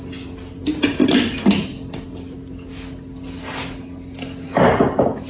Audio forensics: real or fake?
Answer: real